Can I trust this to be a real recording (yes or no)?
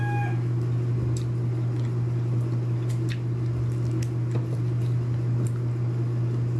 yes